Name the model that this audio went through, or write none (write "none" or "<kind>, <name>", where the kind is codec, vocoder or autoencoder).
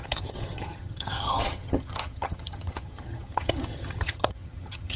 vocoder, HiFi-GAN